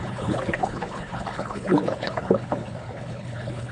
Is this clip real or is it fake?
fake